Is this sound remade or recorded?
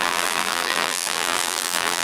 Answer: remade